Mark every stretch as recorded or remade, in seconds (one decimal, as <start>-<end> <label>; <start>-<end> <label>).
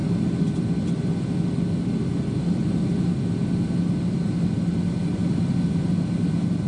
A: 0.0-6.7 recorded